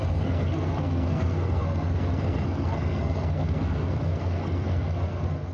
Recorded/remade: remade